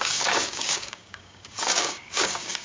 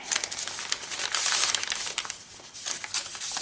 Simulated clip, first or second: first